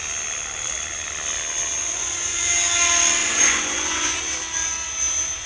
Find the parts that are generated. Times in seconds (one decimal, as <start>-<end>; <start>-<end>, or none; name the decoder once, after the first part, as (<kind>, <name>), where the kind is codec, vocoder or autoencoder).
1.8-2.5 (vocoder, Vocos); 3.2-4.2